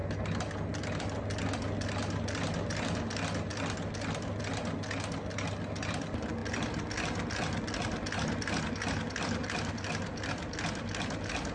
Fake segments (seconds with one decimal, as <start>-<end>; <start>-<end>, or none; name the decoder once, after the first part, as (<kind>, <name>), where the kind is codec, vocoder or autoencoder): none